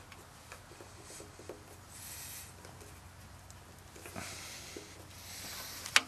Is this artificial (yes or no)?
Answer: no